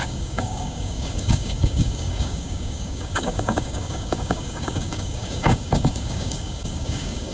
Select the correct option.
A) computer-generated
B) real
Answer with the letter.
A